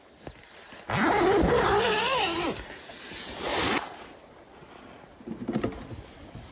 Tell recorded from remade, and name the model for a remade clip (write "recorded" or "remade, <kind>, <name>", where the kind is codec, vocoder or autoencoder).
recorded